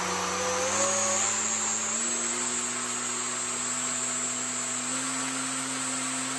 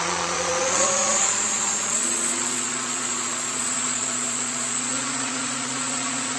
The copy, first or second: second